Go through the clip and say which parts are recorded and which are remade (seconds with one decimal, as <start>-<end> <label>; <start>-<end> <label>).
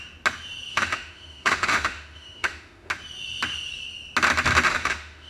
0.0-0.7 recorded; 0.7-2.9 remade; 2.9-4.7 recorded; 4.7-5.3 remade